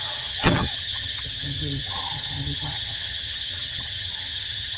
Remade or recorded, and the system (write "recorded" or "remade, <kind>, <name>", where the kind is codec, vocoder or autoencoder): remade, vocoder, HiFi-GAN